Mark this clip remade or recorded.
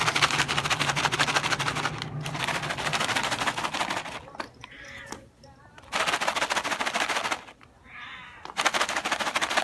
recorded